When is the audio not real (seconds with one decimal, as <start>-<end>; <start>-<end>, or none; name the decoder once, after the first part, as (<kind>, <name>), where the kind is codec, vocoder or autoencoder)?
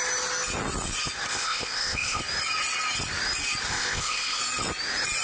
1.3-2.2 (codec, ZipCodec); 3.7-4.4